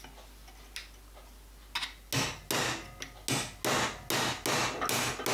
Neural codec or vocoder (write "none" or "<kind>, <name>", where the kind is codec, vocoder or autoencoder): none